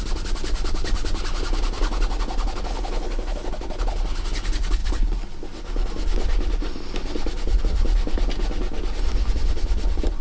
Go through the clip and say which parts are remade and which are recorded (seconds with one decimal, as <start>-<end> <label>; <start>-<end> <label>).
0.0-2.7 recorded; 2.7-3.5 remade; 3.5-10.2 recorded